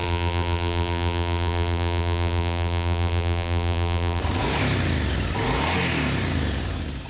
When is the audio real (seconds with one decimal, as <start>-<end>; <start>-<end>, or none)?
4.2-7.1